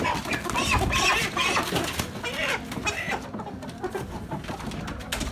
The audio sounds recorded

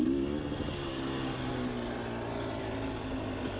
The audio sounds recorded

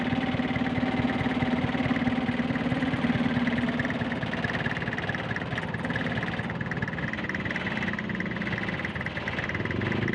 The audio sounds recorded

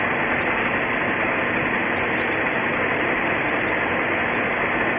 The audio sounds recorded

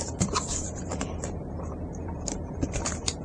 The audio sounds remade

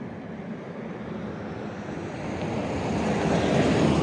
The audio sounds recorded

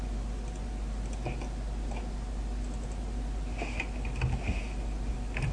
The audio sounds recorded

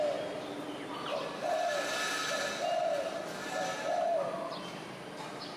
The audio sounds recorded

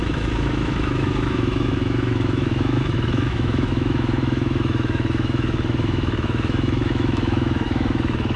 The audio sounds remade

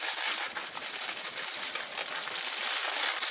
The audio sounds recorded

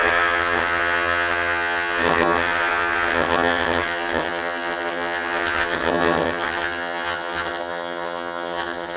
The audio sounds remade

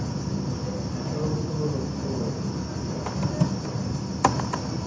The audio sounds recorded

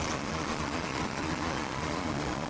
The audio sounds remade